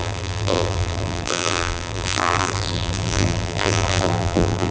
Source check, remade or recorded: remade